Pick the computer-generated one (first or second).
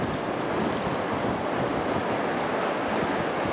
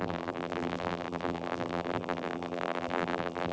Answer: second